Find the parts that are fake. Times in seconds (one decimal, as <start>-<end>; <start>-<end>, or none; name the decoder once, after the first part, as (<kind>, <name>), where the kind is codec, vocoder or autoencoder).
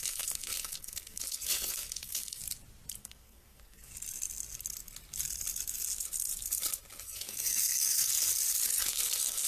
0.0-2.4 (codec, SNAC); 3.0-3.9; 7.0-8.3; 8.8-9.5